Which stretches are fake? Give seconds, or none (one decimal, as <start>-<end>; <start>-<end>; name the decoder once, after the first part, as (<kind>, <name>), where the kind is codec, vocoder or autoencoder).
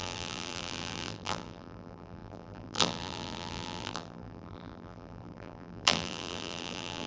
0.0-7.1 (vocoder, BigVGAN v2)